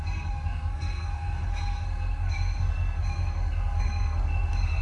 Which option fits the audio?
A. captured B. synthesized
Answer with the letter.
B